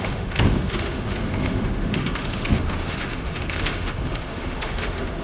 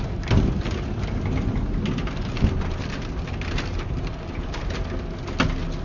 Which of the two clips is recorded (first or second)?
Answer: second